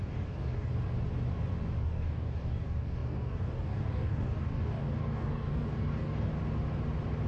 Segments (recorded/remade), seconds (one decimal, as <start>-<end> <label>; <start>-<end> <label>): 0.0-0.7 remade; 0.7-1.8 recorded; 1.8-6.3 remade; 6.3-7.3 recorded